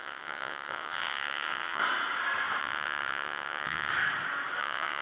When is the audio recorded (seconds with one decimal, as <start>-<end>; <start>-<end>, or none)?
1.8-2.6; 3.9-4.6